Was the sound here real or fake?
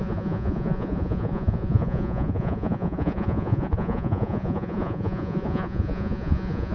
fake